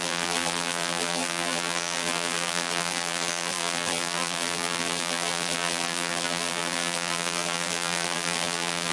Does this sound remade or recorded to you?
remade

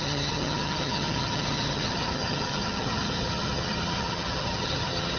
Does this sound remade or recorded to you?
remade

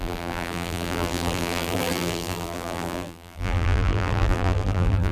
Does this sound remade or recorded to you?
remade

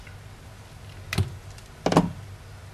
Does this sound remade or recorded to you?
recorded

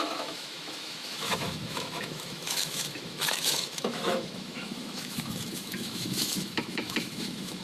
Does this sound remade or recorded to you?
remade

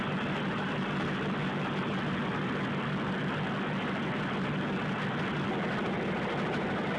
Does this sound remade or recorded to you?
recorded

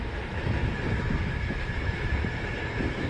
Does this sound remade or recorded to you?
remade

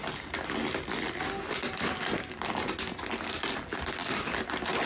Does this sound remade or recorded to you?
recorded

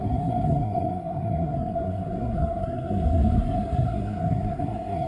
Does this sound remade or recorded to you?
remade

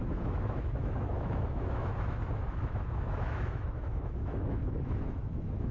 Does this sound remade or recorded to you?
remade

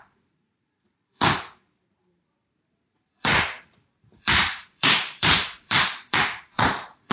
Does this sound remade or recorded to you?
remade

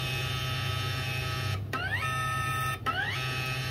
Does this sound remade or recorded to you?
recorded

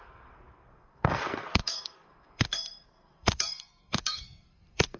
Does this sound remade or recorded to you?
remade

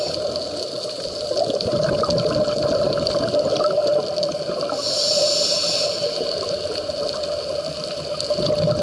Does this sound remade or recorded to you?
recorded